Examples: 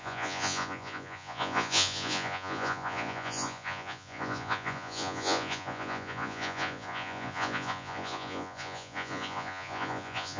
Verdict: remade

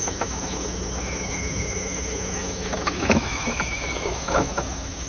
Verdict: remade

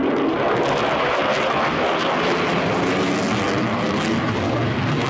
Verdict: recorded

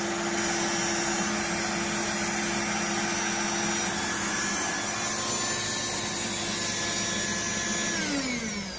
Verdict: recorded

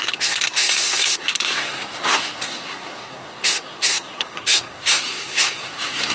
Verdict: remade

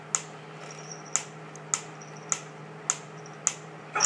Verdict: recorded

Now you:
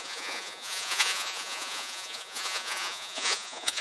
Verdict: remade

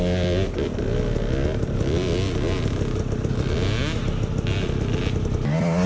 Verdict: recorded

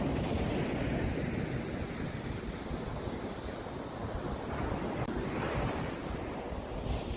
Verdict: recorded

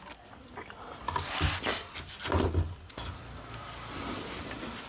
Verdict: recorded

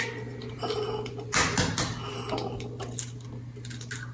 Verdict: recorded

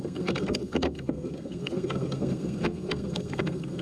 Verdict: remade